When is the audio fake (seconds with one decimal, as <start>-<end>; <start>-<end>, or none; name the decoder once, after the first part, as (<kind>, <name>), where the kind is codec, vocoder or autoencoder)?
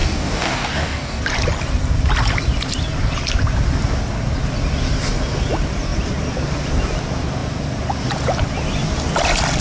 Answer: 0.0-1.2 (codec, DAC)